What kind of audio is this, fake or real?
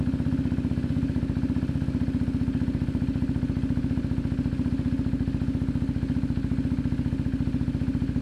real